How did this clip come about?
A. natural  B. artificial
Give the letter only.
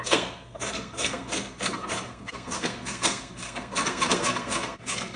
B